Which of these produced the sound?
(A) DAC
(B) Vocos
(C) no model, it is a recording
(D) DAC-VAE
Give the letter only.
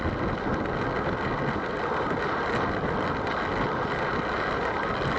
C